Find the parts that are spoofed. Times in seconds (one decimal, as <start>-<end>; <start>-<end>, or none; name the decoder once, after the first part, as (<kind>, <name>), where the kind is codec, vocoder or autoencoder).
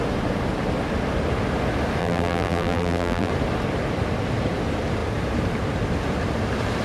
2.0-3.3 (vocoder, BigVGAN v2)